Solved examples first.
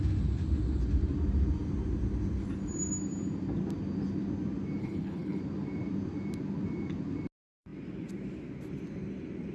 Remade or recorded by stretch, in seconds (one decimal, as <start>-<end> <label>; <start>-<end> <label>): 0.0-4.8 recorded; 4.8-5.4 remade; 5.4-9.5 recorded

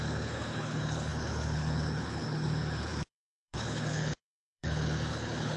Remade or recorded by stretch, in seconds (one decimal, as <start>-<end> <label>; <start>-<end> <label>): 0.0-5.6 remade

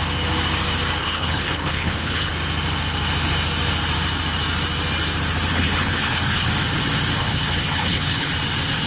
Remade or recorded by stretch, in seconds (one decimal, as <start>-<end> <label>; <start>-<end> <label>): 0.0-1.0 recorded; 1.0-2.3 remade; 2.3-5.5 recorded; 5.5-6.5 remade; 6.5-7.2 recorded; 7.2-8.3 remade; 8.3-8.9 recorded